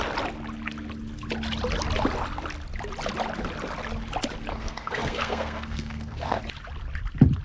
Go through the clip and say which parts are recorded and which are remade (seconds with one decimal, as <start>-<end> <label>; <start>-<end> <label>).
0.0-4.5 recorded; 4.5-6.4 remade; 6.4-7.4 recorded